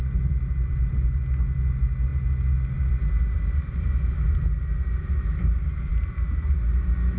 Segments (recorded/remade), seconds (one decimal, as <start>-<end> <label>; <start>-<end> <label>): 0.0-7.2 recorded